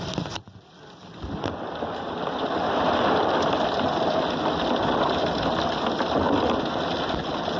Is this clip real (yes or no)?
yes